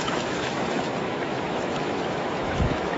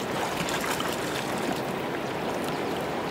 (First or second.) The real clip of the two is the second